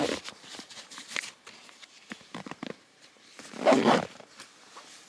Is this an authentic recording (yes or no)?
no